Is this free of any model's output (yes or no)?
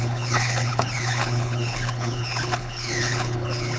no